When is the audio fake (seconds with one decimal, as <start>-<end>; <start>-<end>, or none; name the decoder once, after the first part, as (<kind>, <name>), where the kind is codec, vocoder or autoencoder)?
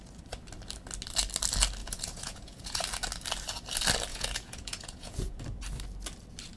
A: 1.8-2.8 (vocoder, Vocos); 4.1-5.4